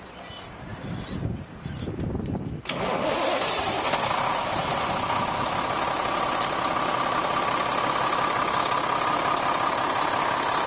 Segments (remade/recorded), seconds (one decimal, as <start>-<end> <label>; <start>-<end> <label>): 0.0-10.7 recorded